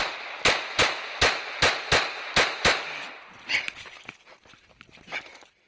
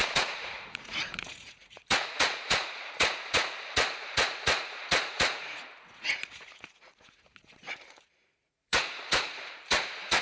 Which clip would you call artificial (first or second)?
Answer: second